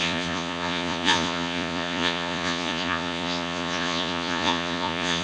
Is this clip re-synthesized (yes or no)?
yes